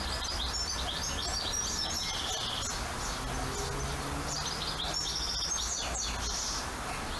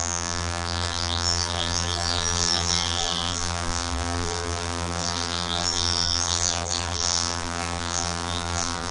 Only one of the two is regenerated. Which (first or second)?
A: second